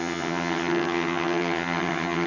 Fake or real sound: fake